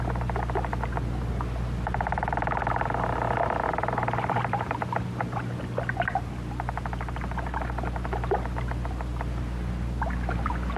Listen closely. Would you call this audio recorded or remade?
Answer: recorded